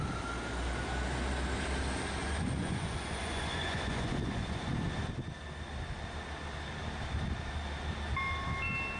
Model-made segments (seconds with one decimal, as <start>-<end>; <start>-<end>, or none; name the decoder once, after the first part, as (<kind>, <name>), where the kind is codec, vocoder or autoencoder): 2.2-4.7 (vocoder, Vocos)